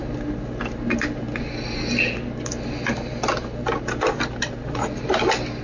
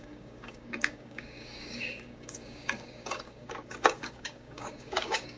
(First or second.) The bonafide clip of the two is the first